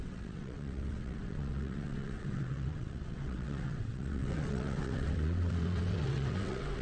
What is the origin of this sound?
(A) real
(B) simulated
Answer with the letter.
B